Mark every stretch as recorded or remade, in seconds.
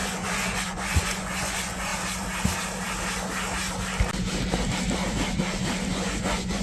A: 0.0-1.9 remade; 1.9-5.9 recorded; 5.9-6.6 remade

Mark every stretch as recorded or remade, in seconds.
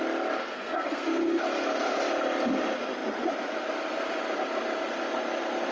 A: 0.0-0.4 recorded; 0.4-1.4 remade; 1.4-5.7 recorded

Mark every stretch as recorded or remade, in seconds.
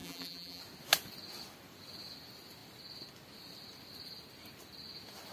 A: 0.0-0.6 remade; 0.6-5.3 recorded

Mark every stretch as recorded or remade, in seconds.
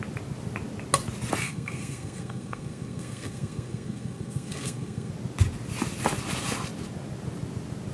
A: 0.0-1.4 recorded; 1.4-5.1 remade; 5.1-7.9 recorded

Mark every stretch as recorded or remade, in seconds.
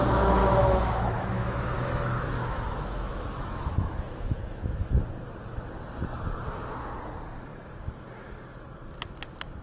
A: 0.0-0.4 recorded; 0.4-4.9 remade; 4.9-9.6 recorded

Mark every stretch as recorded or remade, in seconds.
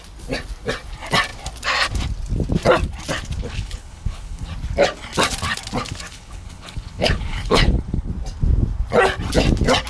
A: 0.0-3.4 recorded; 3.4-4.5 remade; 4.5-6.1 recorded; 6.1-8.1 remade; 8.1-9.9 recorded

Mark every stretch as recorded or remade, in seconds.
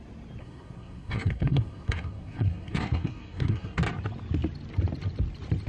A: 0.0-0.4 recorded; 0.4-3.8 remade; 3.8-5.7 recorded